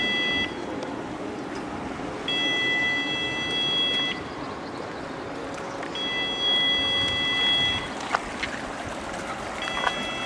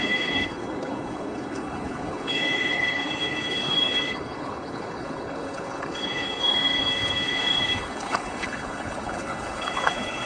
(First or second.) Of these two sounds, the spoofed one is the second